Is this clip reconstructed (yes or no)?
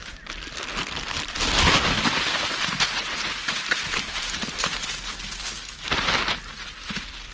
no